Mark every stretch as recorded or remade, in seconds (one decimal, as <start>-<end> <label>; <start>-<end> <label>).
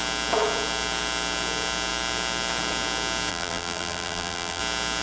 0.0-3.3 recorded; 3.3-4.6 remade; 4.6-5.0 recorded